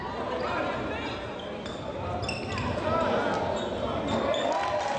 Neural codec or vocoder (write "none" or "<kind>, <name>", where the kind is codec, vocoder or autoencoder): none